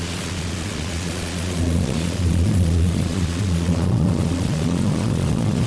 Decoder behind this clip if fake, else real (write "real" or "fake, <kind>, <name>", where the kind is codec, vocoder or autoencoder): fake, vocoder, Vocos